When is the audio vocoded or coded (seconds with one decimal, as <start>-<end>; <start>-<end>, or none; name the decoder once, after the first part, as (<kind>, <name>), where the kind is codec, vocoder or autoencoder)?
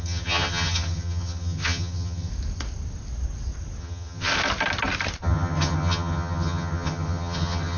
0.0-2.3 (vocoder, HiFi-GAN); 3.8-4.3; 5.2-7.8